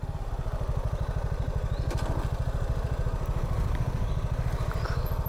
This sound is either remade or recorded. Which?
recorded